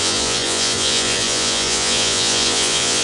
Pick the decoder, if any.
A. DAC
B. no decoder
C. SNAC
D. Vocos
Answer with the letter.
D